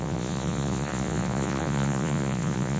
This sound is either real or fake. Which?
fake